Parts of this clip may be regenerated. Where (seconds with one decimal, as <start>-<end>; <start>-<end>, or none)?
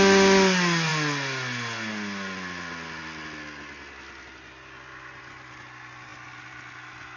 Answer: none